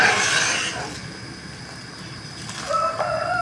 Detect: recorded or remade recorded